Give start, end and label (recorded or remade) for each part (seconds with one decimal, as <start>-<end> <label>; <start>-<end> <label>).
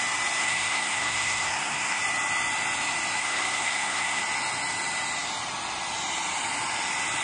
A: 0.0-0.4 recorded; 0.4-2.0 remade; 2.0-3.2 recorded; 3.2-4.2 remade; 4.2-7.2 recorded